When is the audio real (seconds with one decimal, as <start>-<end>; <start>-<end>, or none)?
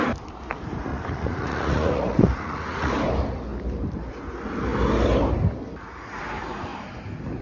0.0-0.9; 2.9-7.4